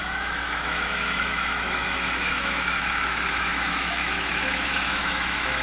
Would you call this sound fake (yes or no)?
yes